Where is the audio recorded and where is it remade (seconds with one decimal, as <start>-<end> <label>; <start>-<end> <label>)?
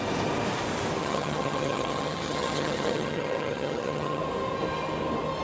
0.0-1.0 recorded; 1.0-4.2 remade; 4.2-5.4 recorded